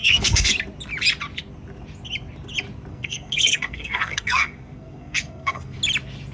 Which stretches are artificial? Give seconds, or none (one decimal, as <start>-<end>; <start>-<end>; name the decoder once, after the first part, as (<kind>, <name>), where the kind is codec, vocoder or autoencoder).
0.0-0.5 (codec, SNAC); 2.9-5.8